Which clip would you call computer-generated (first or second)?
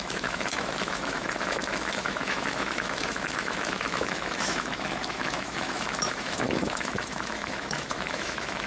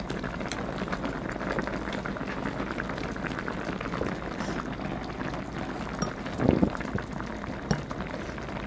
first